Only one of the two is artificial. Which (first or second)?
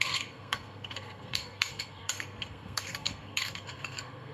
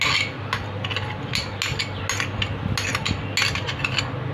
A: first